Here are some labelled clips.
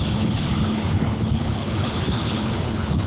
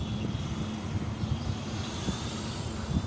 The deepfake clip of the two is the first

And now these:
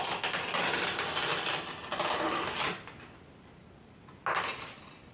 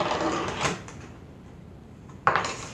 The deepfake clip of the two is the second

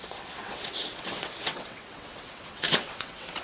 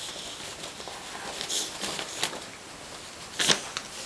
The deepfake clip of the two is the first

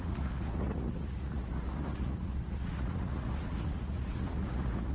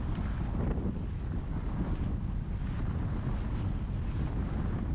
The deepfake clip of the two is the first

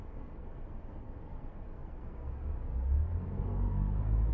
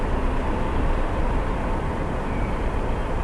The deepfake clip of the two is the first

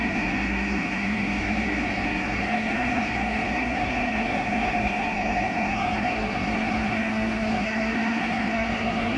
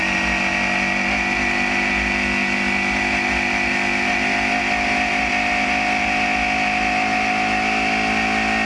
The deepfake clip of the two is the first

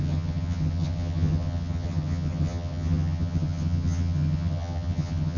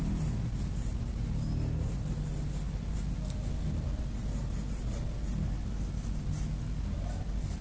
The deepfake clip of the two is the first